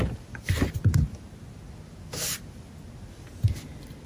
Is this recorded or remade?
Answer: recorded